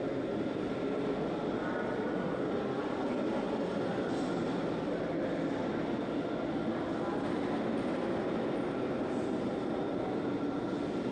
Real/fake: real